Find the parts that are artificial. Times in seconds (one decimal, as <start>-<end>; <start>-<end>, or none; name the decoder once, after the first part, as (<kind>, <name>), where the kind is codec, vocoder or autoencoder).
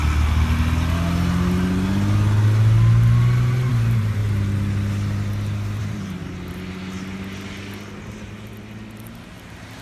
3.7-4.2 (vocoder, BigVGAN v2); 5.8-6.2; 8.1-8.5; 9.3-9.8